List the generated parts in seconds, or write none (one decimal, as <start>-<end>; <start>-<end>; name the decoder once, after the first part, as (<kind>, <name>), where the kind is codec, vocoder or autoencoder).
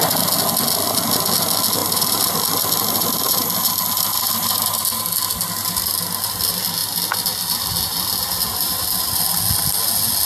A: 1.8-5.0 (vocoder, BigVGAN v2); 6.8-9.2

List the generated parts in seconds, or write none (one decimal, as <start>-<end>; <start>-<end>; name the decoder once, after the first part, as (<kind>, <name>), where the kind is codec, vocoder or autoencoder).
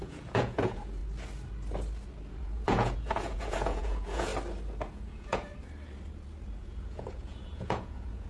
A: 0.0-1.0 (vocoder, Vocos); 2.3-4.3; 4.9-5.5; 6.6-8.3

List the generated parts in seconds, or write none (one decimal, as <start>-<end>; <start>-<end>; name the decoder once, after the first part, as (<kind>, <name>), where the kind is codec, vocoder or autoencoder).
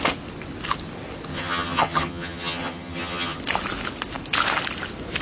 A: 1.3-3.4 (vocoder, HiFi-GAN)